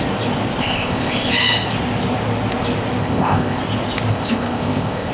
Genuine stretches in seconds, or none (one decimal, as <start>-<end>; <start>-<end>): 0.0-0.6; 1.3-3.0; 3.6-4.1